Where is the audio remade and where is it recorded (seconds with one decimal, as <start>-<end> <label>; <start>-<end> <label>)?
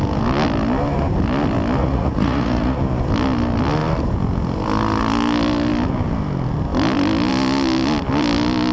0.0-1.8 recorded; 1.8-2.8 remade; 2.8-8.7 recorded